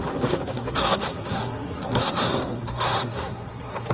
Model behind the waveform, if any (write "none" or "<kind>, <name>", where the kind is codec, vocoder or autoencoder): codec, SNAC